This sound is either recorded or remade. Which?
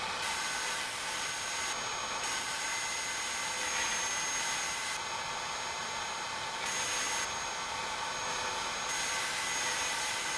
recorded